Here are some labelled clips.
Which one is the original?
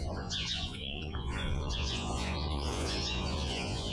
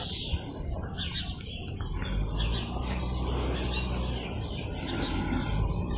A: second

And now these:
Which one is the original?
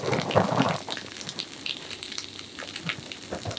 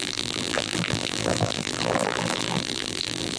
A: first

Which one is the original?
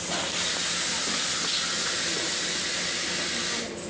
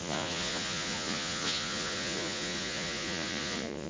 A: first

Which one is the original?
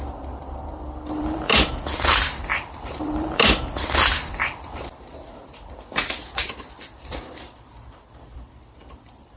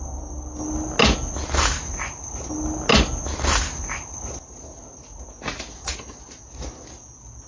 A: second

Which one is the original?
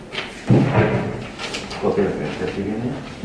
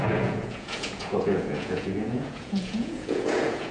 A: first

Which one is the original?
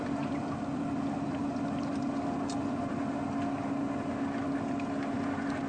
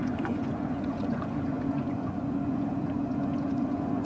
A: first